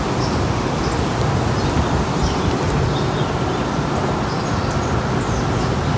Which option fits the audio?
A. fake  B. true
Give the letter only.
B